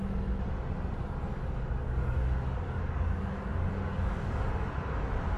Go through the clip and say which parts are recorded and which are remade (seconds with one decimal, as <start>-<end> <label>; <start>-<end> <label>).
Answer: 0.0-1.3 recorded; 1.3-4.5 remade; 4.5-5.4 recorded